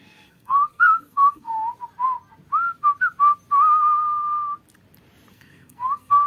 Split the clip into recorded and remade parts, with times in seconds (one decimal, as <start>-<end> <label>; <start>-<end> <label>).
0.0-1.5 remade; 1.5-5.3 recorded; 5.3-6.3 remade